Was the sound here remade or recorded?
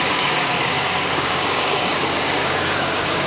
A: remade